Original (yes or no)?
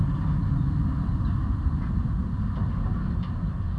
yes